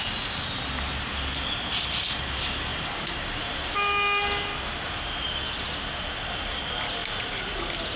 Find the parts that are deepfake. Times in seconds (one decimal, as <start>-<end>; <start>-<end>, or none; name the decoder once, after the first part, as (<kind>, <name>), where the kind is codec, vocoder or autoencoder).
2.7-3.7 (vocoder, BigVGAN v2); 7.0-7.6